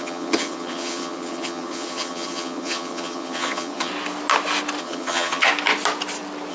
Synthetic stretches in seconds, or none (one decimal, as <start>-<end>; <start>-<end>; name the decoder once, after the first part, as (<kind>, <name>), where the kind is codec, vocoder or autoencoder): 0.0-3.9 (vocoder, HiFi-GAN); 4.8-5.5